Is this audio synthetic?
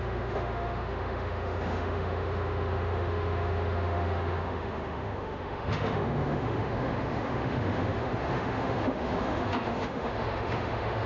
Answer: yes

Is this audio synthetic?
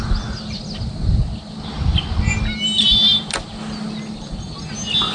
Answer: no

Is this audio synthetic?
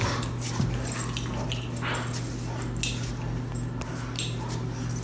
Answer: no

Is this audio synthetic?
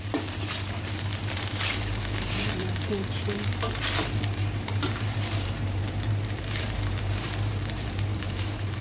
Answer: yes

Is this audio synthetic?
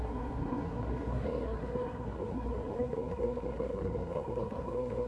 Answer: yes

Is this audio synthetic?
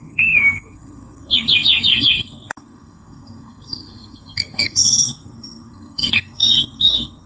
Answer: yes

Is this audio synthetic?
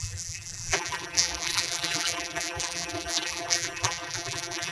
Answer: yes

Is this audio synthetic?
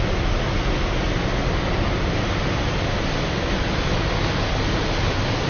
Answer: no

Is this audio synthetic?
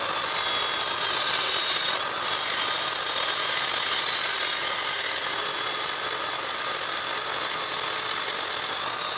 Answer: no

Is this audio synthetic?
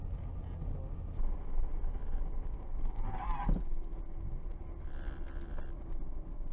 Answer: no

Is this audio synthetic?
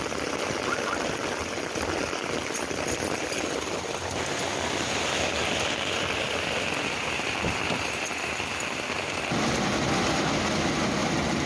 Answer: no